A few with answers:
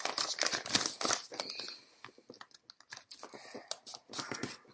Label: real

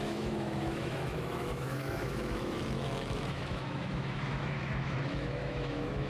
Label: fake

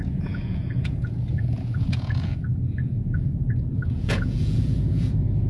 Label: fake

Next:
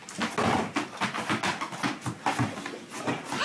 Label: real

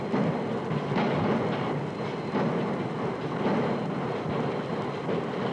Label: real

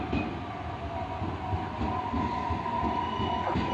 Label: real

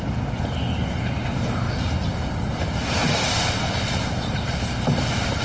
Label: real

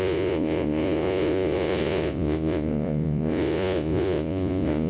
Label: fake